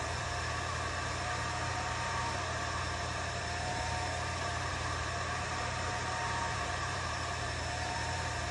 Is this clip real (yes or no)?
no